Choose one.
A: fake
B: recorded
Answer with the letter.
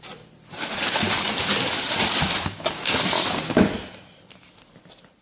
A